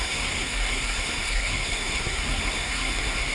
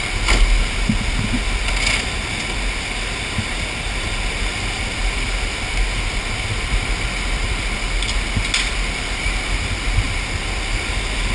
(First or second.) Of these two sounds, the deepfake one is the first